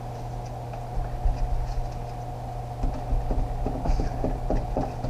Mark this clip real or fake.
real